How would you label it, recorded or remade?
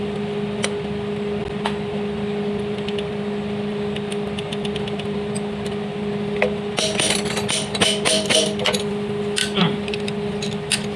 recorded